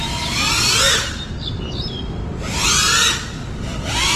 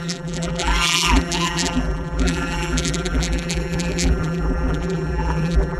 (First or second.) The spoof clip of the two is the second